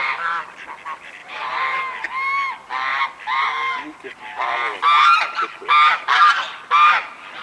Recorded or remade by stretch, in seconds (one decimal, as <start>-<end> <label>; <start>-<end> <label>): 0.0-1.2 recorded; 1.2-1.8 remade; 1.8-7.4 recorded

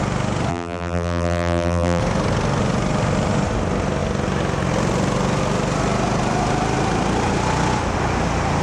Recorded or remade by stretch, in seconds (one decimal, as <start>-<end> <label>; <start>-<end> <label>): 0.0-0.5 recorded; 0.5-2.0 remade; 2.0-8.6 recorded